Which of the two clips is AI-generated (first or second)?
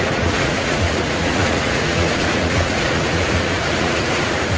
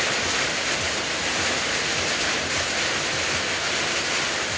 first